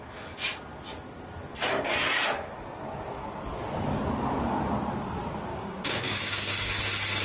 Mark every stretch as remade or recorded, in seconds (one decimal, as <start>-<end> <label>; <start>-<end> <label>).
0.0-5.5 recorded; 5.5-6.7 remade; 6.7-7.2 recorded